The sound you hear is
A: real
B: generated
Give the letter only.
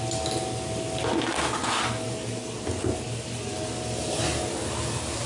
A